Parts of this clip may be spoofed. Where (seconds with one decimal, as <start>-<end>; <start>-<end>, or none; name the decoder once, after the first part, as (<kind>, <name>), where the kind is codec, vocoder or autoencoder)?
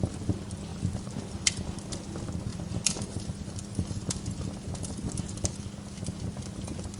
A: 0.7-1.5 (vocoder, BigVGAN v2); 2.5-5.3